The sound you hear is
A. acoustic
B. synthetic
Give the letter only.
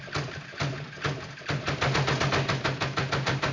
A